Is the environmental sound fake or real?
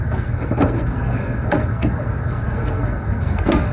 fake